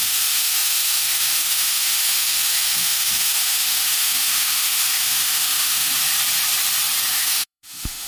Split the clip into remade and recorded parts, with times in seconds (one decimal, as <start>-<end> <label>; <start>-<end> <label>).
0.0-5.9 remade; 5.9-7.1 recorded; 7.1-8.1 remade